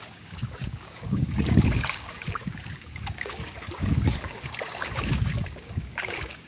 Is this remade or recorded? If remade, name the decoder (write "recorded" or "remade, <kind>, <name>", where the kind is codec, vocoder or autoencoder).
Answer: remade, codec, DAC